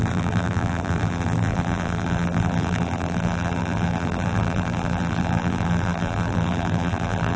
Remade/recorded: remade